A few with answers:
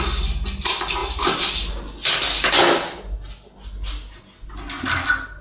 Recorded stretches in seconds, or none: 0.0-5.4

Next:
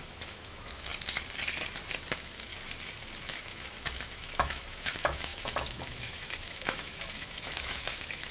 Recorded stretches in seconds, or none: 0.9-2.1; 2.5-3.2

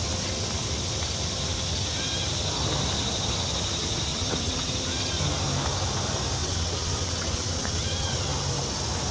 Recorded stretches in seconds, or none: 0.0-4.1; 4.7-6.4; 8.2-9.1

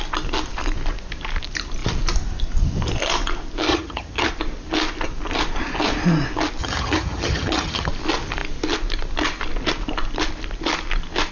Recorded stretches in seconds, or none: 0.0-3.7; 4.3-6.6; 7.9-11.3

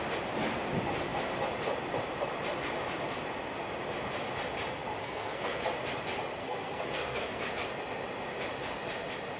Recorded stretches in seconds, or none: 0.0-5.0; 5.6-6.4; 7.5-9.4

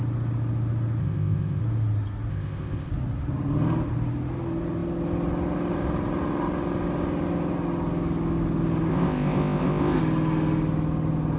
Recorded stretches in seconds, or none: 0.0-1.0; 1.6-2.3; 2.9-8.9; 10.0-11.4

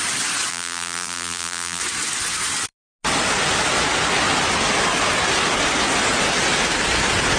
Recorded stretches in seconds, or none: 0.0-0.5; 1.8-7.4